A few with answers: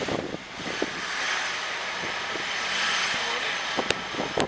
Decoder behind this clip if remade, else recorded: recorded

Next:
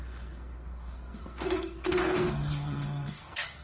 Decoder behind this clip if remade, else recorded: remade, codec, SNAC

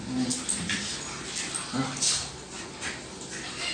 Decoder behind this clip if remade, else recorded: recorded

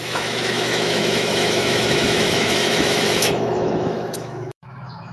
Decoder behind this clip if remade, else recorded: remade, autoencoder, DAC-VAE